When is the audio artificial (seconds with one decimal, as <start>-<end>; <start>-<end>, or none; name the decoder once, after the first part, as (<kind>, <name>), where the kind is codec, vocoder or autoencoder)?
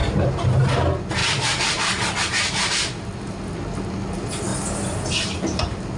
0.0-0.6 (vocoder, BigVGAN v2); 1.2-2.7; 4.5-5.6